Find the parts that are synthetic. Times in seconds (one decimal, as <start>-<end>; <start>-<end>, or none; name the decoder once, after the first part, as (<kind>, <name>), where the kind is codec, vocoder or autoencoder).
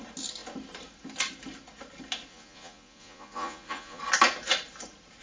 2.3-4.0 (vocoder, Vocos)